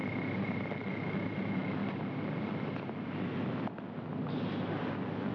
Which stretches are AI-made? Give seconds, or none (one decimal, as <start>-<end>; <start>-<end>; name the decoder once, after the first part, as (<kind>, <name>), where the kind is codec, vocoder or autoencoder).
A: 0.7-1.8 (autoencoder, DAC-VAE)